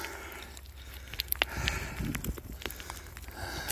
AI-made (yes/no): no